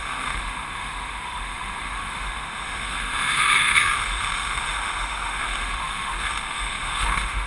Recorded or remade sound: remade